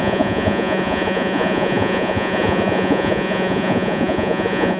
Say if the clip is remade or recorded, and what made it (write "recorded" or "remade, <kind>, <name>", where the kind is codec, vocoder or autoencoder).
remade, vocoder, Vocos